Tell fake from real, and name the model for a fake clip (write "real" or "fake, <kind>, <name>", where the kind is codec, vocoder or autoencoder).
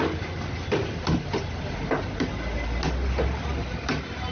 real